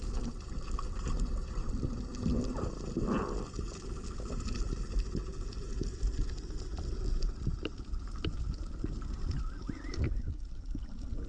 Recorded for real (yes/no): yes